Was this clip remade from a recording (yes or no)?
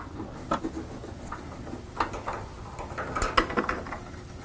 no